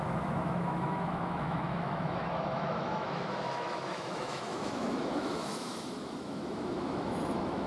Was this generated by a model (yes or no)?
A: yes